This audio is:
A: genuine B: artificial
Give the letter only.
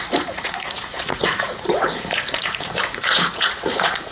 B